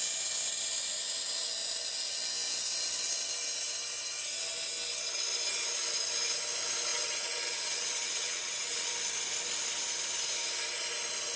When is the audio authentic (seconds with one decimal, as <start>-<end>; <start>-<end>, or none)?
0.0-6.9; 8.9-11.4